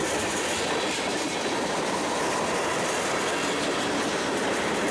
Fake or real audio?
real